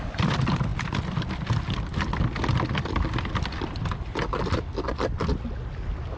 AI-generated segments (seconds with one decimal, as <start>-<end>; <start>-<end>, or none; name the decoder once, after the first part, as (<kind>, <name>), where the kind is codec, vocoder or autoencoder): none